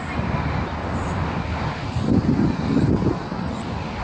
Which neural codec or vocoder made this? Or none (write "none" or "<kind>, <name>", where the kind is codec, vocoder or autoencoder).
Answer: none